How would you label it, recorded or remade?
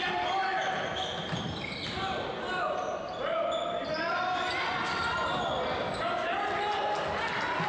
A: recorded